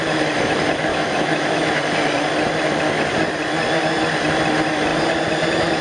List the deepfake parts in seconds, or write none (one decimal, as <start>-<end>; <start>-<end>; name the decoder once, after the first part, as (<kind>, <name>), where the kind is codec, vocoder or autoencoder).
0.9-1.8 (autoencoder, DAC-VAE)